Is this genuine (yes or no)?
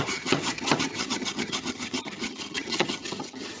no